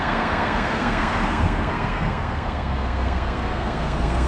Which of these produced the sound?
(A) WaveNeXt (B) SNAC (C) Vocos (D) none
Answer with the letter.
B